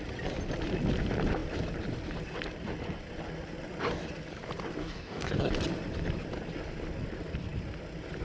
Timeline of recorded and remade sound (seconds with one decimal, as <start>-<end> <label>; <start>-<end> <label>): 0.0-4.8 recorded; 4.8-5.5 remade; 5.5-8.2 recorded